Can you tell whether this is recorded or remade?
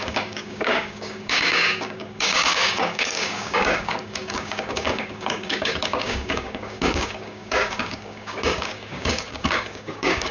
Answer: remade